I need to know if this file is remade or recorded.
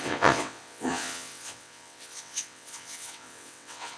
remade